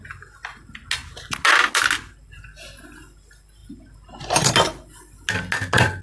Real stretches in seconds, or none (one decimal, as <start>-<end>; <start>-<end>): 0.0-6.0